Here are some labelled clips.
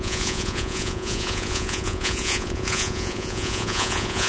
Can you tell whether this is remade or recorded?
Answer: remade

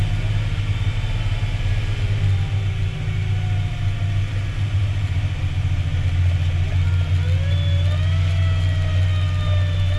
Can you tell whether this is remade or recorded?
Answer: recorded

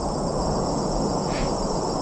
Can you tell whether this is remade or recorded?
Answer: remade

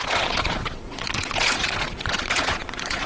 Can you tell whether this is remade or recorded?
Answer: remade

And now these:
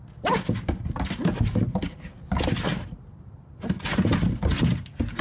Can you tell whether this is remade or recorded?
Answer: recorded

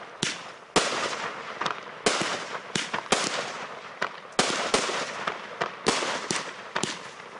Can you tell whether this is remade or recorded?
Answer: recorded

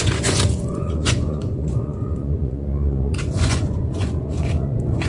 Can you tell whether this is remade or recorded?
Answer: remade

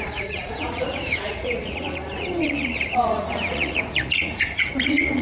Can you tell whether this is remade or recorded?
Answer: remade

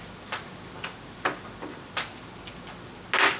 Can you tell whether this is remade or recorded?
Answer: recorded